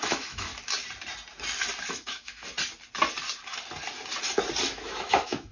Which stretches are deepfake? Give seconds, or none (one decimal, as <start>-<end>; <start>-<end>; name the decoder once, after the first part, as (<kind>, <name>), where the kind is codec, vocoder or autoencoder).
0.0-0.5 (autoencoder, DAC-VAE); 1.9-2.4; 4.6-5.5